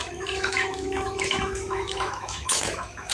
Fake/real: fake